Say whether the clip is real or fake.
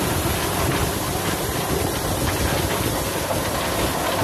real